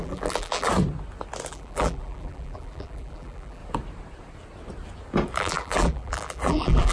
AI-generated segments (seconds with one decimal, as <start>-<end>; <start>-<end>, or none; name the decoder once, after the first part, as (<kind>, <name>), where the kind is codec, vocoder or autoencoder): 0.0-0.7 (vocoder, BigVGAN v2); 1.5-3.6; 5.4-6.9